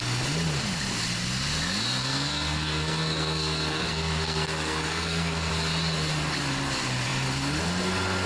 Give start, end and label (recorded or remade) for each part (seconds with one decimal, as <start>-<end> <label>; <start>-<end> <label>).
0.0-2.0 recorded; 2.0-5.5 remade; 5.5-8.3 recorded